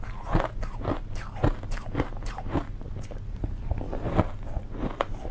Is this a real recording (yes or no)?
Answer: yes